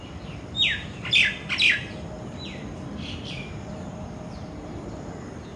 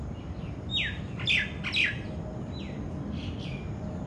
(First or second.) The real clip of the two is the second